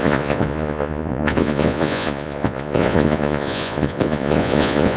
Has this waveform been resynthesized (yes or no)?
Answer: yes